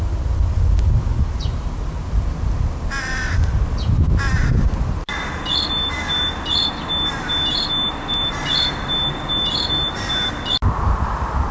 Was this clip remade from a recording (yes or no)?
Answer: no